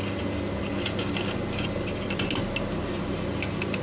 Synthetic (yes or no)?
no